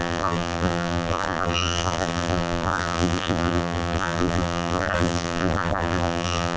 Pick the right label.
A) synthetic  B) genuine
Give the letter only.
A